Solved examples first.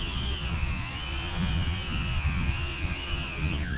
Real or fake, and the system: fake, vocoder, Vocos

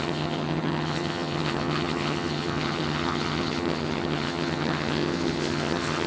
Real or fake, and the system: fake, vocoder, HiFi-GAN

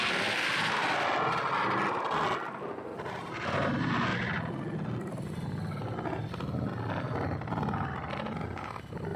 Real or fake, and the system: real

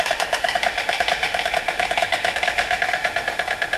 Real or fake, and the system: fake, autoencoder, DAC-VAE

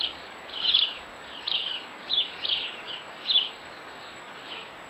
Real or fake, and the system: fake, codec, DAC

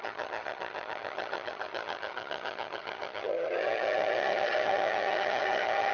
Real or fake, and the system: fake, vocoder, HiFi-GAN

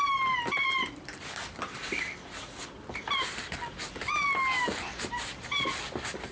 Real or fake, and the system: real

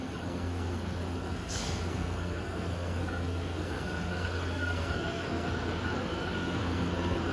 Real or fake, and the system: fake, codec, SNAC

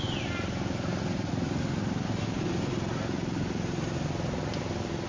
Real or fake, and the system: real